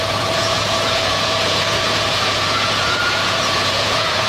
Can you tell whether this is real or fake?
fake